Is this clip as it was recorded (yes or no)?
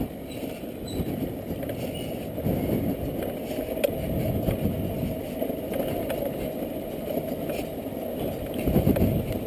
yes